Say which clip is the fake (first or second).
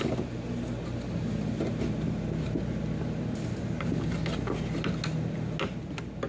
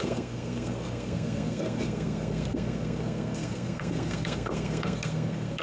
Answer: second